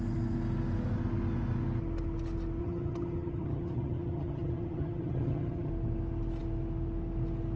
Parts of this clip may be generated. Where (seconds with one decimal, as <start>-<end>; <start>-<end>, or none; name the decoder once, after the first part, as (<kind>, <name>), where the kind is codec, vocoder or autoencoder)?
2.6-5.7 (vocoder, HiFi-GAN)